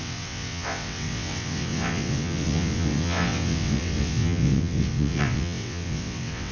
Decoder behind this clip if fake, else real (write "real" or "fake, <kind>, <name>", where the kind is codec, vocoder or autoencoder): fake, vocoder, WaveNeXt